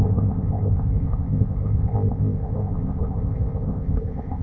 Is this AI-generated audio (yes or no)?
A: yes